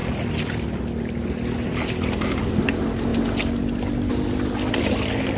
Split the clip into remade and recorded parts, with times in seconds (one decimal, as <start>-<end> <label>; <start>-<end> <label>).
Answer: 0.0-5.4 recorded